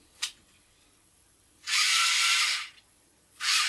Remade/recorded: remade